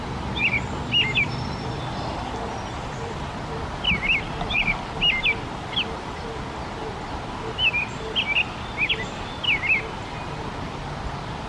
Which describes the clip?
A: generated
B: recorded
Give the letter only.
B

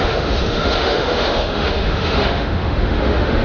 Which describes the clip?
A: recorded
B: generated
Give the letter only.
B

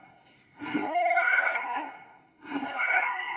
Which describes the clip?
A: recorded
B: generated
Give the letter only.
B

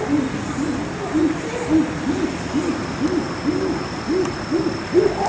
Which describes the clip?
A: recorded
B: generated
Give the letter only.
A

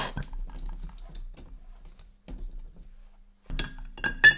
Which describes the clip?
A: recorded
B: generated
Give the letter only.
A